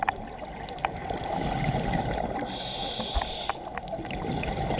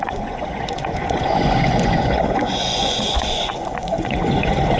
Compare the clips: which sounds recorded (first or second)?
first